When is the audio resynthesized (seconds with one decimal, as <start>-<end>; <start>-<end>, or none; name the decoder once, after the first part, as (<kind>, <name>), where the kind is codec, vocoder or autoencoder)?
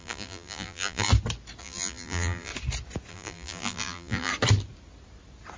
0.0-1.1 (vocoder, BigVGAN v2); 1.6-2.5; 3.1-4.3